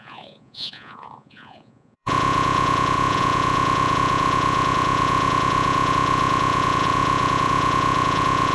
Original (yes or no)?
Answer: no